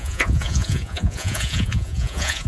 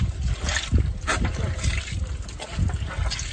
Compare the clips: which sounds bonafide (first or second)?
second